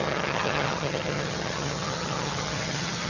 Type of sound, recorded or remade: remade